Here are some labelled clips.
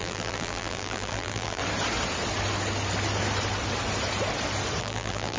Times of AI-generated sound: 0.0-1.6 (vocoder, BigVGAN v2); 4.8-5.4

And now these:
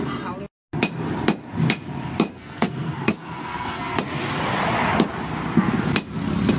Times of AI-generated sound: 2.3-4.0 (codec, SNAC)

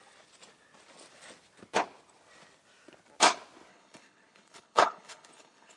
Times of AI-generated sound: 3.7-5.8 (codec, HILCodec)

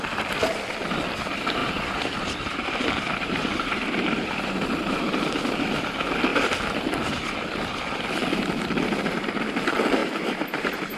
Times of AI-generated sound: 1.6-5.3 (vocoder, BigVGAN v2); 10.0-11.0

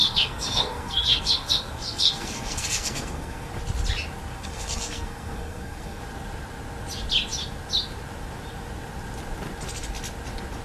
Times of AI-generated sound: 0.0-3.5 (codec, SNAC); 4.3-6.0

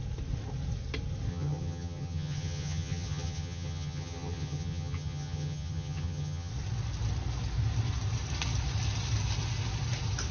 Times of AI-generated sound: 1.3-6.5 (vocoder, HiFi-GAN)